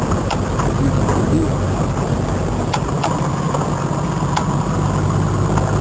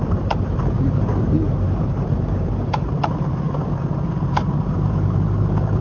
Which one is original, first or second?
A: first